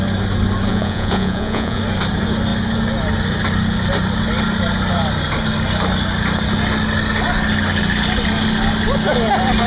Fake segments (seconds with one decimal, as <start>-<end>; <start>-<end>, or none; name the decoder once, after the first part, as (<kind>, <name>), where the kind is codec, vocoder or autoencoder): 0.7-1.8 (vocoder, Vocos)

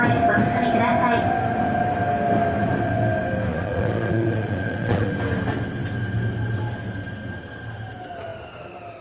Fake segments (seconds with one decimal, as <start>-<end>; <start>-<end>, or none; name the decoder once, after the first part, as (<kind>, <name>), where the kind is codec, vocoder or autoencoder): 3.5-5.1 (vocoder, Vocos)